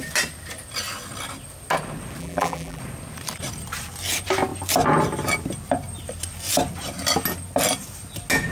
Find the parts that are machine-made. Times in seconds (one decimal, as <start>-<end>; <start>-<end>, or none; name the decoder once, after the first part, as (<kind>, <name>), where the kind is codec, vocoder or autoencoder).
2.2-2.8 (vocoder, BigVGAN v2)